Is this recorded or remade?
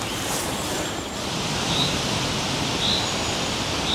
recorded